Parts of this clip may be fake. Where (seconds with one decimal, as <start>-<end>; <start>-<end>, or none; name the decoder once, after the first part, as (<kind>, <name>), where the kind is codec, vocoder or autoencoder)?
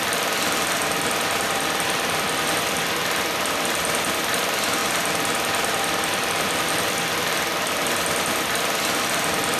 0.0-4.8 (vocoder, BigVGAN v2); 6.3-9.6